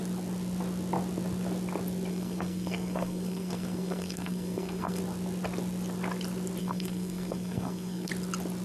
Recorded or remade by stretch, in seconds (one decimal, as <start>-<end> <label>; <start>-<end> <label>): 0.0-2.1 recorded; 2.1-5.0 remade; 5.0-6.6 recorded; 6.6-8.1 remade; 8.1-8.6 recorded